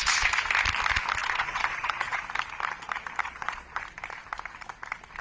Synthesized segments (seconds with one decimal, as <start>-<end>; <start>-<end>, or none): 1.2-2.2; 3.2-3.8